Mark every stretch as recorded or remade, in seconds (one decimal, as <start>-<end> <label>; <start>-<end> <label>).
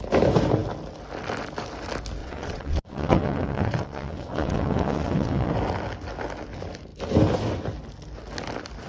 0.0-2.2 recorded; 2.2-5.5 remade; 5.5-8.9 recorded